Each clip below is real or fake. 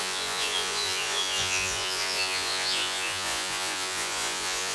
fake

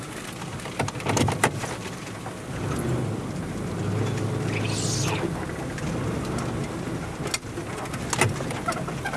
real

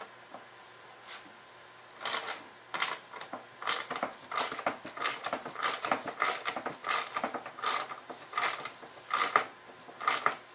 real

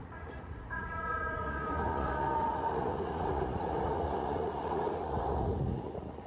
fake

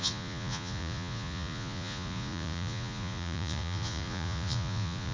fake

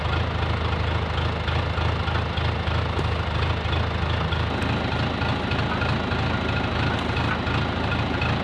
real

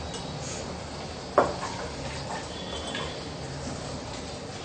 real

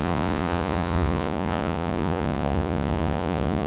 fake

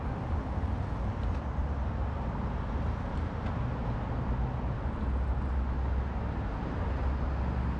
real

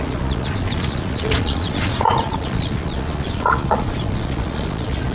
fake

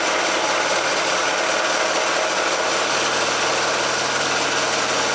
real